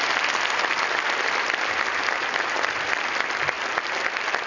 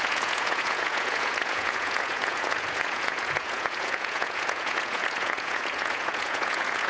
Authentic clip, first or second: first